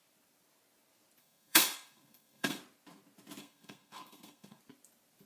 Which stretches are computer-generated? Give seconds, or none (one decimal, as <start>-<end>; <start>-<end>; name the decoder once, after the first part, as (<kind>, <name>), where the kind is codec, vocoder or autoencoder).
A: 1.2-2.6 (codec, SNAC); 3.4-4.6